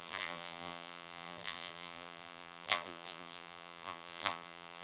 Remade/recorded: remade